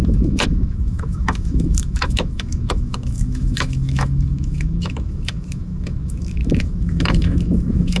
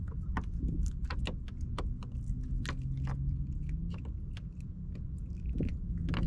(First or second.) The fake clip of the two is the first